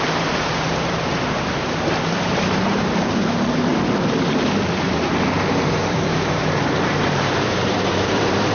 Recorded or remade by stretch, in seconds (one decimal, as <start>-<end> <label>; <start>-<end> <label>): 0.0-3.7 remade; 3.7-5.7 recorded; 5.7-8.5 remade